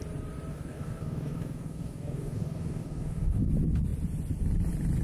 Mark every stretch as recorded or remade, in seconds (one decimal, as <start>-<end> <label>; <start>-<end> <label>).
0.0-0.5 recorded; 0.5-3.5 remade; 3.5-5.0 recorded